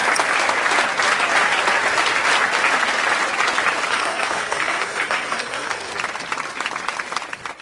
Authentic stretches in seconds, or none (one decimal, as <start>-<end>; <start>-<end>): 0.0-3.9; 5.9-7.6